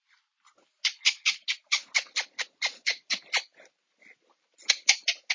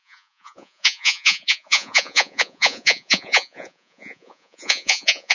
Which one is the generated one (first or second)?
second